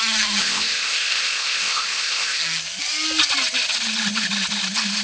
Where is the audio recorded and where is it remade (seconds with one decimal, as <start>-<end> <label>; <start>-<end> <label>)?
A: 0.0-0.4 recorded; 0.4-2.4 remade; 2.4-5.0 recorded